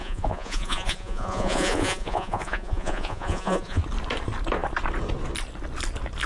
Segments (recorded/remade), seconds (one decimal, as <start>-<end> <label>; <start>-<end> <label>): 0.0-3.8 remade; 3.8-6.3 recorded